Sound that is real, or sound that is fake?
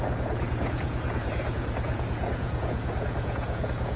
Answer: fake